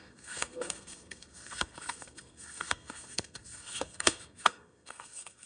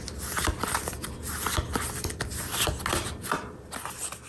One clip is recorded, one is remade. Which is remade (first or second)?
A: first